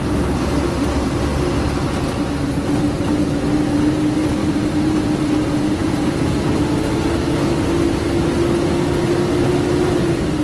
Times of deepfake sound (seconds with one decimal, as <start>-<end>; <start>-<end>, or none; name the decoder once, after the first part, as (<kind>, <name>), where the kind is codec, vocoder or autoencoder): 4.4-5.1 (vocoder, BigVGAN v2)